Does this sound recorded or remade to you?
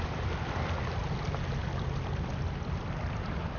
recorded